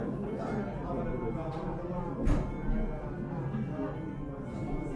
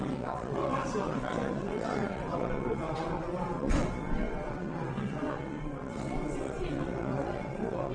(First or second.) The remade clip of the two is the second